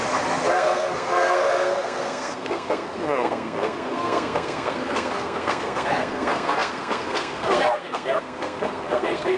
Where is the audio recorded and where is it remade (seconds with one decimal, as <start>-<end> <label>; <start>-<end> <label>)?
0.0-0.5 recorded; 0.5-9.4 remade